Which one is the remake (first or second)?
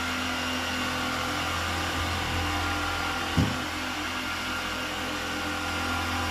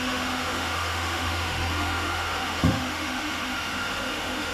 second